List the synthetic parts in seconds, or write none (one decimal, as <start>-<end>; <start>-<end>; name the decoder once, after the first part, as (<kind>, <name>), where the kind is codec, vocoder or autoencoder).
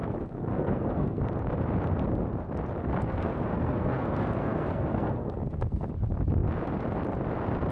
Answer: 0.0-1.2 (codec, SNAC); 2.8-5.9